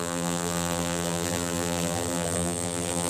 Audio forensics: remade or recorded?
remade